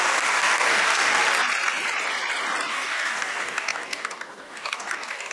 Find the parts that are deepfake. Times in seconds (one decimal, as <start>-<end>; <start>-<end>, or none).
0.0-1.2; 2.7-5.3